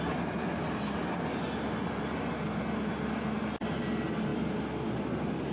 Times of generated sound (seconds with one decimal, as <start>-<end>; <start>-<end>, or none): none